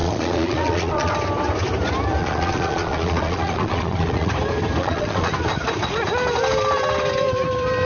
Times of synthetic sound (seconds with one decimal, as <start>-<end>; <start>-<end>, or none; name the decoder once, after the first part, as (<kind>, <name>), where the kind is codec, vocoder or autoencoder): 0.0-1.1 (vocoder, Vocos); 2.2-4.3; 4.8-5.3